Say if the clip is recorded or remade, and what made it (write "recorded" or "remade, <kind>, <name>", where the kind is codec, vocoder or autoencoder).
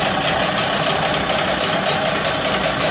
recorded